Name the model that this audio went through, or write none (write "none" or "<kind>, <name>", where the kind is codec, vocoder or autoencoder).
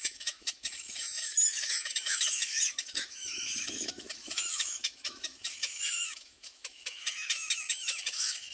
autoencoder, DAC-VAE